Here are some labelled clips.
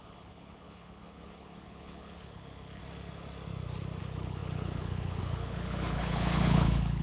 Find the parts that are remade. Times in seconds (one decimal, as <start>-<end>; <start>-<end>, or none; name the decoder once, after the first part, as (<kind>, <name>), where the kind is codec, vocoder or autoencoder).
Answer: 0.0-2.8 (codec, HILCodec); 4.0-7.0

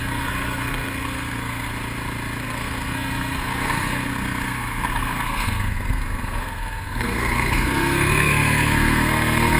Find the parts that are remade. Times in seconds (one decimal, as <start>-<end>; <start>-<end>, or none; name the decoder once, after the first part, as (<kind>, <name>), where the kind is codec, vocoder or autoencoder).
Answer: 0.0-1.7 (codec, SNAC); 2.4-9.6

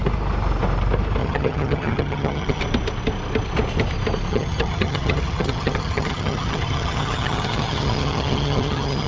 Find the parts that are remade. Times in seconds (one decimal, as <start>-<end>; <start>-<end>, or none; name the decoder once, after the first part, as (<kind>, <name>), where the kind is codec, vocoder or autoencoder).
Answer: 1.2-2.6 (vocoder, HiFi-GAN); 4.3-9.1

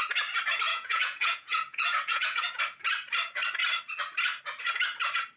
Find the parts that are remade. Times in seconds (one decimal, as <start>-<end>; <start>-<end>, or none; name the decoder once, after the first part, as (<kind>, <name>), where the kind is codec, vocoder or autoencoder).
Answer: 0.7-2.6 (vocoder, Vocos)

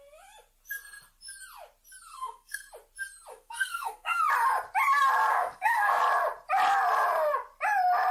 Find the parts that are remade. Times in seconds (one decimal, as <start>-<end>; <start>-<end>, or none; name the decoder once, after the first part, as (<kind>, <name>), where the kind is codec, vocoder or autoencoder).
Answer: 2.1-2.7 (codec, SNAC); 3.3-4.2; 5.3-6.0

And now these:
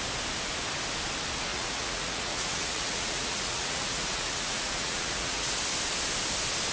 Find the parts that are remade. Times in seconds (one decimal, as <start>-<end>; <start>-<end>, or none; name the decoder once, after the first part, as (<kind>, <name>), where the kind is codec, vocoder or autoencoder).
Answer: 1.5-5.5 (vocoder, Vocos)